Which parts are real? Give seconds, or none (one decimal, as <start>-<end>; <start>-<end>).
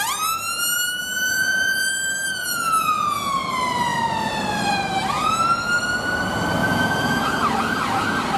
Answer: 0.0-1.1; 3.3-6.6; 7.4-8.4